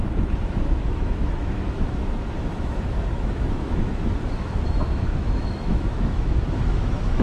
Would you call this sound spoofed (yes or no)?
yes